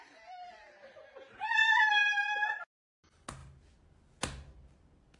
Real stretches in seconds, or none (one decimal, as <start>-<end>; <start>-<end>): 0.0-5.2